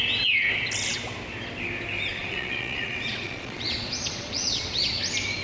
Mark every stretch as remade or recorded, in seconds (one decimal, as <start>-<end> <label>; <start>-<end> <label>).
0.0-2.1 recorded; 2.1-5.0 remade; 5.0-5.4 recorded